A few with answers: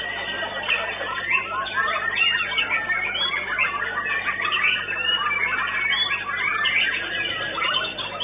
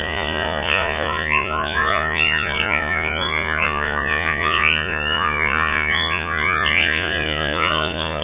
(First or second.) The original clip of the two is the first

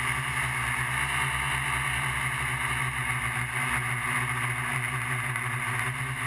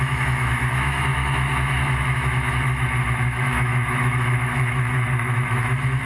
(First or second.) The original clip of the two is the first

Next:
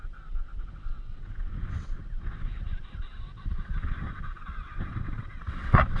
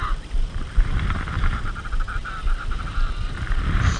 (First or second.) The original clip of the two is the second